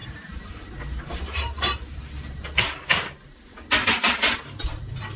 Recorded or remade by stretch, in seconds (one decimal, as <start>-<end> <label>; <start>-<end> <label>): 0.0-2.0 remade; 2.0-2.9 recorded; 2.9-3.5 remade; 3.5-5.2 recorded